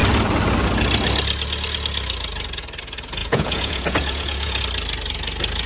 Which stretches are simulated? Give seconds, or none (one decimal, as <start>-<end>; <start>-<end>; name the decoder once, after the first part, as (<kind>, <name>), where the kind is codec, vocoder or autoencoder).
3.2-4.6 (vocoder, Vocos)